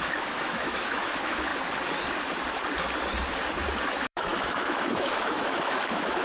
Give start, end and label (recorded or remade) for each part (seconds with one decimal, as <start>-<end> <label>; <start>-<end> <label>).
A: 0.0-1.5 remade; 1.5-3.9 recorded; 3.9-6.2 remade